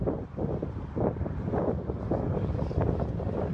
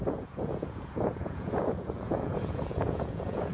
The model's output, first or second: second